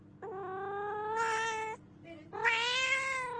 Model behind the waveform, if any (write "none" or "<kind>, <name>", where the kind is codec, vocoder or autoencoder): none